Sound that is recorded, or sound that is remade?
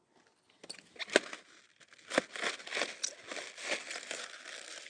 recorded